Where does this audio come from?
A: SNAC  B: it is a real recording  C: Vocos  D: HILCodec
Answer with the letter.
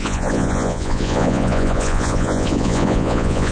C